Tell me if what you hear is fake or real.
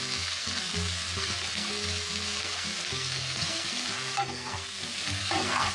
fake